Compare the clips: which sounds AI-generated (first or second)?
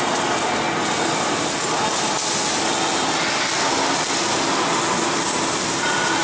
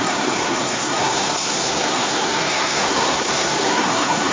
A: second